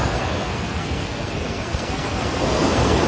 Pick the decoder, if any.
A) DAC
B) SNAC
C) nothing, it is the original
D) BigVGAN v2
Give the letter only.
B